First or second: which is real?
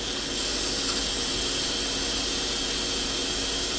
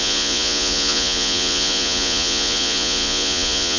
first